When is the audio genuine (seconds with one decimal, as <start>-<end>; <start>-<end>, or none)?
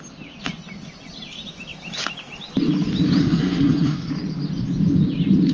0.0-3.2; 4.1-5.5